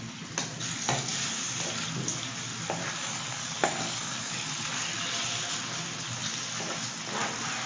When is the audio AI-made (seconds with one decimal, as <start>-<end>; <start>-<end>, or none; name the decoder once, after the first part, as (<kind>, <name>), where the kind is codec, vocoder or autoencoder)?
2.8-5.0 (codec, DAC)